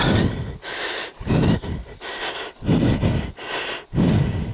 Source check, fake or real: real